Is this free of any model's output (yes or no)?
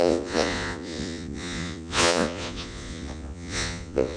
no